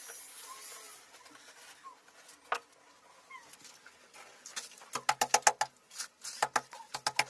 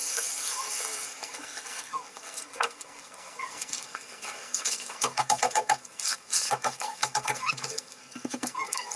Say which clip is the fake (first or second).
second